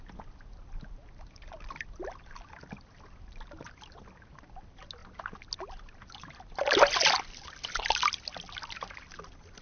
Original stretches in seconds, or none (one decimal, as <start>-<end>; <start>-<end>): 0.0-9.6